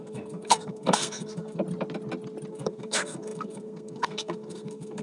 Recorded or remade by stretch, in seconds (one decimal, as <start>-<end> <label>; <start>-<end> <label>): 0.0-1.6 remade; 1.6-2.5 recorded; 2.5-5.0 remade